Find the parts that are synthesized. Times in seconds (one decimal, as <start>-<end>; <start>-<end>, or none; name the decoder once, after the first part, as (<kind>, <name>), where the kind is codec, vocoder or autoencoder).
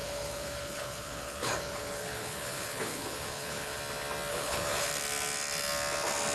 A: 0.0-3.8 (codec, HILCodec); 4.3-4.9